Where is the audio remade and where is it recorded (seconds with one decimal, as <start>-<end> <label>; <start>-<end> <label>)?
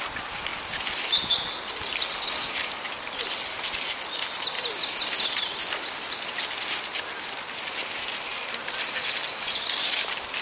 0.0-10.4 recorded